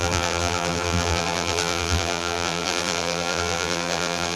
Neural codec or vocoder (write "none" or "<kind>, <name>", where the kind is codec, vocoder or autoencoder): vocoder, BigVGAN v2